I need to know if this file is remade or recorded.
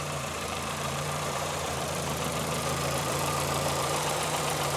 remade